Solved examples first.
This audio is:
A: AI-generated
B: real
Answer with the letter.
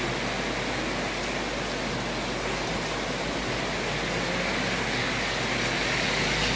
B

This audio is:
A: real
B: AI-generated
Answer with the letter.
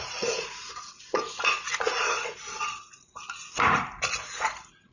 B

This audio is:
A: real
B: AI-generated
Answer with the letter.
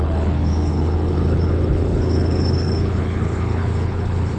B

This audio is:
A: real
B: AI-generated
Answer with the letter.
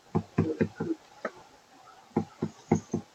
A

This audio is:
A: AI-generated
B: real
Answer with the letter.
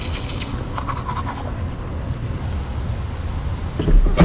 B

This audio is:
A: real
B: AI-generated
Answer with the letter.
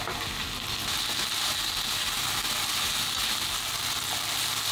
A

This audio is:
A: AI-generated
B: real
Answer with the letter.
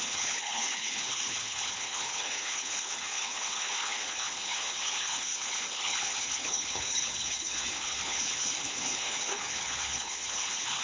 A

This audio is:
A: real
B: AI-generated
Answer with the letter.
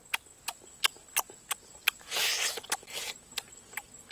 A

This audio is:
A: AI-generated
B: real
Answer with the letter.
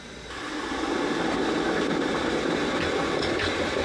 A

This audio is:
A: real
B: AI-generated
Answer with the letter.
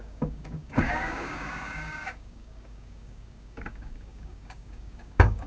B